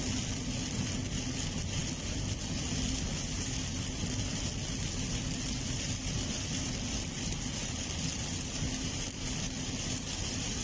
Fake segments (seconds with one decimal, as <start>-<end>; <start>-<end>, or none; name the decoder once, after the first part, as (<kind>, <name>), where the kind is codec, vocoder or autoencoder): none